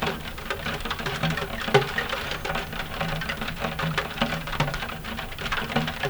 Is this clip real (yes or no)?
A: no